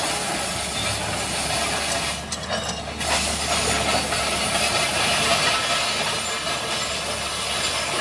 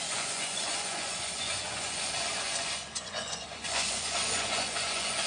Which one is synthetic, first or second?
second